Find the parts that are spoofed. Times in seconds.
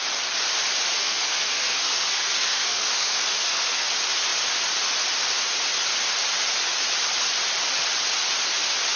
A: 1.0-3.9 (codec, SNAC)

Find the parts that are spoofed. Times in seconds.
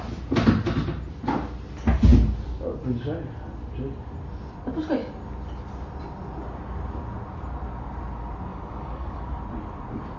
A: 8.5-9.3 (codec, DAC)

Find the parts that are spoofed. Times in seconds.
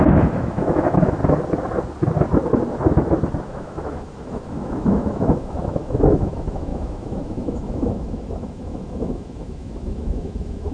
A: 0.0-1.2 (autoencoder, DAC-VAE); 3.4-10.7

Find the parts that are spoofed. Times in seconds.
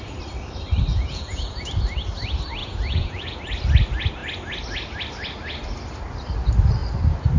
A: 0.9-1.6 (vocoder, Vocos); 2.6-3.4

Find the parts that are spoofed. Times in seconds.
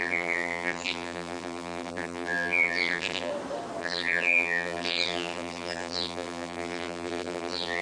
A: 0.0-3.3 (vocoder, BigVGAN v2); 3.8-7.8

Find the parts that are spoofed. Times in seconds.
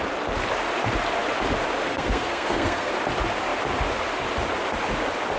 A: 1.9-2.9 (codec, SNAC)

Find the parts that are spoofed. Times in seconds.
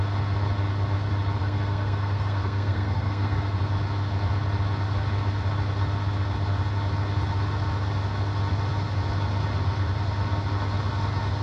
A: 1.4-3.6 (codec, SNAC)